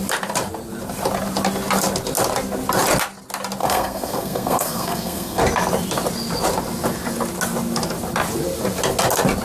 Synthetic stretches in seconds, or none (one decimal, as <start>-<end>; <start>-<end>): 3.6-5.4